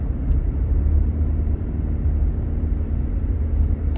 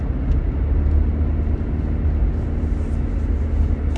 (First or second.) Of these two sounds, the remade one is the first